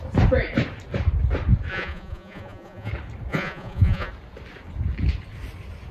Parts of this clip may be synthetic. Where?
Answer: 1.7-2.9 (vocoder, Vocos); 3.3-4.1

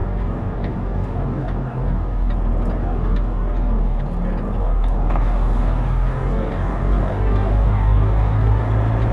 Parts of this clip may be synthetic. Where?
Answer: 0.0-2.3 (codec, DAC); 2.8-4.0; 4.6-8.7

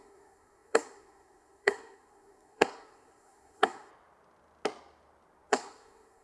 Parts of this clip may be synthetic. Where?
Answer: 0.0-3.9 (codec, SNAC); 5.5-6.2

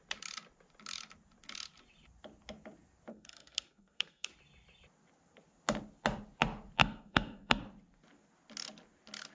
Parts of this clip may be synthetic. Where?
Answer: 3.1-4.3 (codec, SNAC); 6.8-7.6